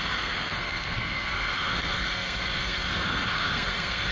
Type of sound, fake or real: fake